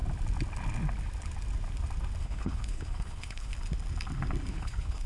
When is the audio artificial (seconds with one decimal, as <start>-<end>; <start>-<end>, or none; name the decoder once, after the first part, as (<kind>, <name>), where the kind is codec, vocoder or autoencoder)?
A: 2.2-3.5 (codec, HILCodec); 4.5-5.1